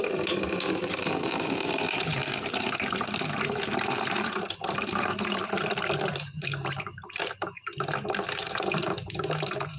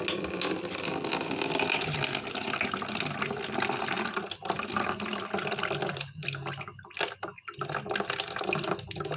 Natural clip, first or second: second